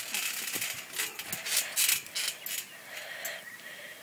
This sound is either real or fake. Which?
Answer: real